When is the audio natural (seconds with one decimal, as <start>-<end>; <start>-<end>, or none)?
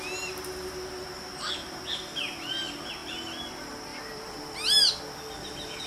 0.0-3.9; 4.5-5.9